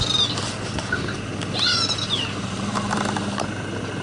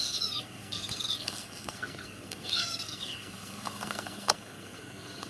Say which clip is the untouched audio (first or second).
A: first